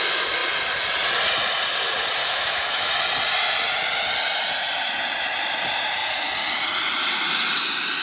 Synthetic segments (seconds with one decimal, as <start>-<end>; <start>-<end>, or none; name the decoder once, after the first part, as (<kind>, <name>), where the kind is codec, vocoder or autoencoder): 2.2-2.9 (autoencoder, DAC-VAE)